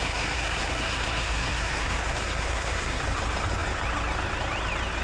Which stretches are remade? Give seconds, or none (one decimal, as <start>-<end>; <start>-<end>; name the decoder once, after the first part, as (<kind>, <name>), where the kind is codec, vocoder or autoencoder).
0.0-3.0 (codec, SNAC)